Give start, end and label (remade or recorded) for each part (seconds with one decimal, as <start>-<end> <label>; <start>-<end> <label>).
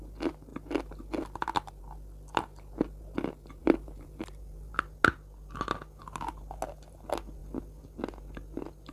0.0-3.6 recorded; 3.6-4.7 remade; 4.7-8.9 recorded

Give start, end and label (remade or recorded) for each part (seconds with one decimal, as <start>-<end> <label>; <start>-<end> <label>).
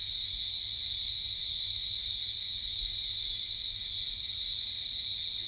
0.0-2.8 remade; 2.8-4.3 recorded; 4.3-5.5 remade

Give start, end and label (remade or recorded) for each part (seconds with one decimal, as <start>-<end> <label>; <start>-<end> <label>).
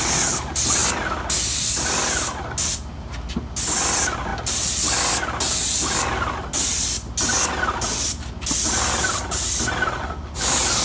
0.0-10.8 recorded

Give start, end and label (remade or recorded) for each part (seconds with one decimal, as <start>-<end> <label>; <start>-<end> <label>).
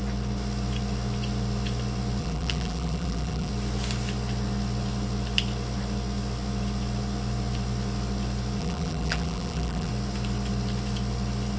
0.0-2.2 recorded; 2.2-3.5 remade; 3.5-8.6 recorded; 8.6-9.9 remade; 9.9-11.6 recorded